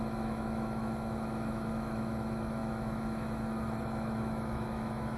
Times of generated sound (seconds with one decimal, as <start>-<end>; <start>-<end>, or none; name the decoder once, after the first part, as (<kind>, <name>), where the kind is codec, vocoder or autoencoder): 0.0-5.2 (autoencoder, DAC-VAE)